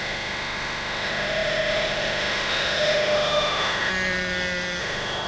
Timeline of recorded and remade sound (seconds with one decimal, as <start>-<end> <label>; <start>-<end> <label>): 0.0-3.9 remade; 3.9-4.8 recorded; 4.8-5.3 remade